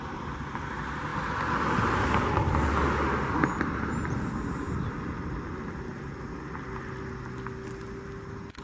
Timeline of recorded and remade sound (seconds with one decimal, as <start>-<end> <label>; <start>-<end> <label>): 0.0-8.6 recorded